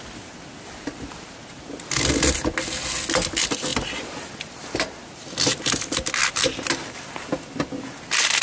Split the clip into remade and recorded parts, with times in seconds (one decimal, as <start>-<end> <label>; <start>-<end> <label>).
0.0-8.4 recorded